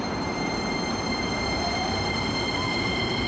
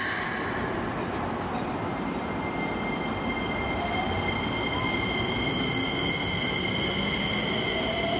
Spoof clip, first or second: first